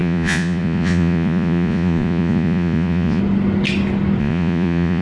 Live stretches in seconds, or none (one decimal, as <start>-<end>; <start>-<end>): 3.2-4.2